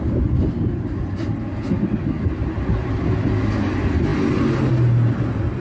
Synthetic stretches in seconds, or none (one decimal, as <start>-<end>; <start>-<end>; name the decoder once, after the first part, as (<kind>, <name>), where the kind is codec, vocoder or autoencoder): none